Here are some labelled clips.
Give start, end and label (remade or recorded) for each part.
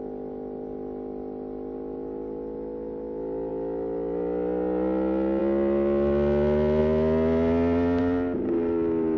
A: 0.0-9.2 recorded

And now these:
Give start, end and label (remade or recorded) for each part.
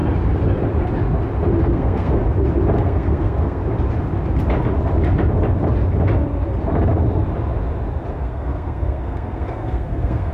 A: 0.0-1.6 recorded; 1.6-2.2 remade; 2.2-2.8 recorded; 2.8-3.6 remade; 3.6-8.1 recorded; 8.1-10.3 remade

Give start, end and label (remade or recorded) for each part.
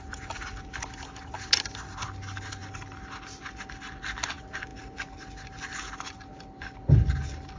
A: 0.0-7.6 recorded